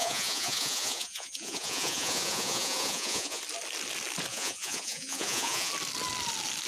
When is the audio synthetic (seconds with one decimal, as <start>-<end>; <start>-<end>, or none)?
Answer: 0.0-3.4; 4.3-5.7